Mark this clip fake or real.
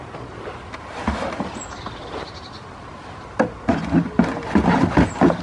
real